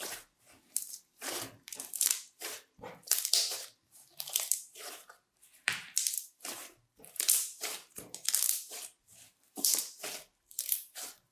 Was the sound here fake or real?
fake